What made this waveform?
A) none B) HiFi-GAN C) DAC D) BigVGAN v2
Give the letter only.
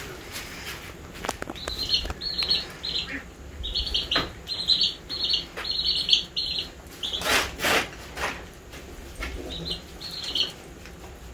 A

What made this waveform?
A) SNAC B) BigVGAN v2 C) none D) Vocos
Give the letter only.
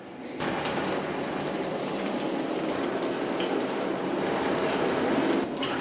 C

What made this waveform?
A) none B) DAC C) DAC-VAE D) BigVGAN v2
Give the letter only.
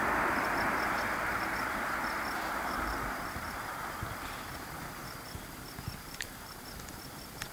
D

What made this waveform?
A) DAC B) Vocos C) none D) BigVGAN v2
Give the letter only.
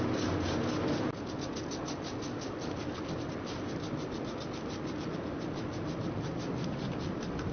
C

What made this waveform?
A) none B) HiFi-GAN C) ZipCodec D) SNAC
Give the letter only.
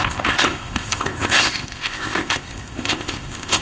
C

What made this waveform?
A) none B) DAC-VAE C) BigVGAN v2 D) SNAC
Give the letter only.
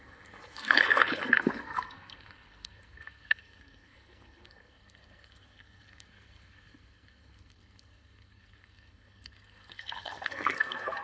D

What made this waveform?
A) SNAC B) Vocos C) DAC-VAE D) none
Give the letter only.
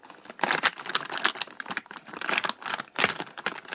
D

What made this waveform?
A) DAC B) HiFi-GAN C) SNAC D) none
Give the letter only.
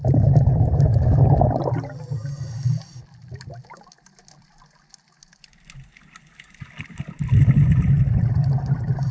D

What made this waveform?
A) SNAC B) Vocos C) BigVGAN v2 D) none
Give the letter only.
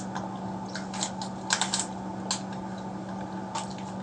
D